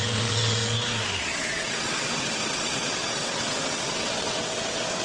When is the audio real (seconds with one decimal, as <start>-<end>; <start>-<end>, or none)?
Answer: 0.6-1.2